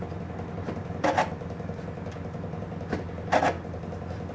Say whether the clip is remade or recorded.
recorded